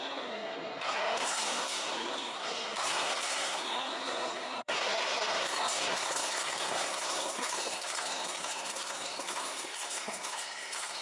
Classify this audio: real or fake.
fake